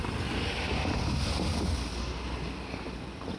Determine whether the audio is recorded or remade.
recorded